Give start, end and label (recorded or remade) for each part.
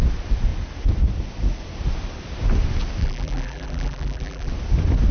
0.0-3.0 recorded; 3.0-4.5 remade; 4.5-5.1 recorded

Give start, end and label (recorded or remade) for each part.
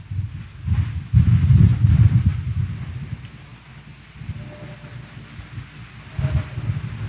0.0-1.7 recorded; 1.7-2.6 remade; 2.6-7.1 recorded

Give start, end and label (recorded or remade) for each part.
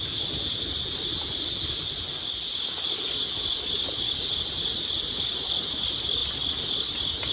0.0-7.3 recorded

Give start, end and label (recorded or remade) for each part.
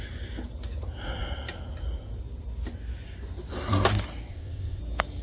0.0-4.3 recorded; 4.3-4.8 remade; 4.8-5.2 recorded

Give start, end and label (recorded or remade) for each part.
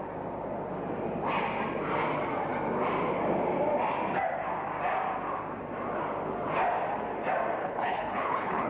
0.0-7.6 recorded; 7.6-8.7 remade